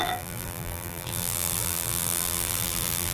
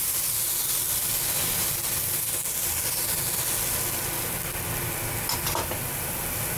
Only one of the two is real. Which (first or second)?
second